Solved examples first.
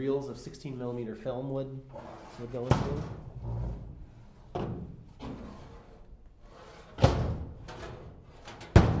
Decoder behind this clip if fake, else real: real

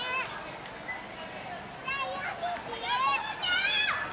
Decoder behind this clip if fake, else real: real